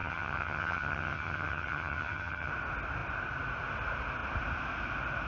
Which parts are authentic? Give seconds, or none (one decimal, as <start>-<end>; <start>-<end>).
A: 2.5-5.3